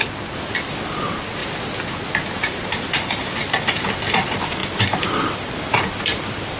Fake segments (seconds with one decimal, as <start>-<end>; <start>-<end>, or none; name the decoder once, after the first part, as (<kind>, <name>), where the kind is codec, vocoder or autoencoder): 0.6-1.4 (vocoder, BigVGAN v2); 2.3-6.6